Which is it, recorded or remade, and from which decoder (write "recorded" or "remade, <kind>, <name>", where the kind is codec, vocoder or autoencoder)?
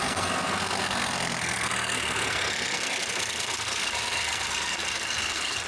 remade, codec, SNAC